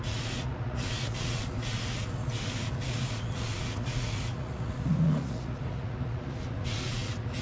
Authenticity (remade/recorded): remade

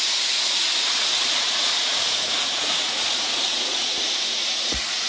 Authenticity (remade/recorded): remade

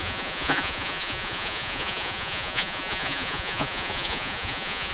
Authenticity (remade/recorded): remade